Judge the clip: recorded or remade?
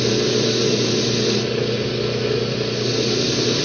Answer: recorded